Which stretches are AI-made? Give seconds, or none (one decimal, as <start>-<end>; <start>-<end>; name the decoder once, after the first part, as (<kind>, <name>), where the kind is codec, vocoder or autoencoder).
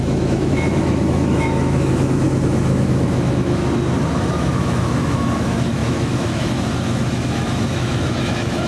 0.0-3.6 (autoencoder, DAC-VAE); 4.1-8.7